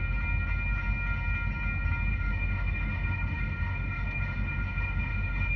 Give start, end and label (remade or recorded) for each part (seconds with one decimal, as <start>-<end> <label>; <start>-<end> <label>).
0.0-2.1 recorded; 2.1-5.6 remade